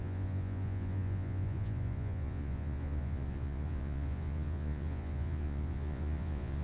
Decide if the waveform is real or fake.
fake